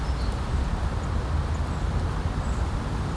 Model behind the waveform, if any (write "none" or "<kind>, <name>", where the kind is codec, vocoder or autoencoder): none